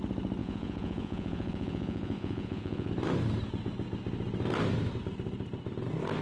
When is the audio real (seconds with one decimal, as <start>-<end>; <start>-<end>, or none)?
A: 0.0-0.4; 2.9-6.2